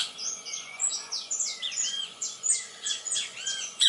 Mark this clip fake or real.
fake